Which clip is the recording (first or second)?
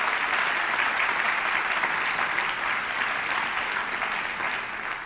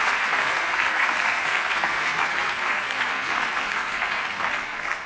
first